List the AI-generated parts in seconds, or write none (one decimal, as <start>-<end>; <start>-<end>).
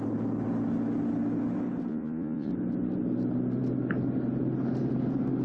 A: 1.9-2.5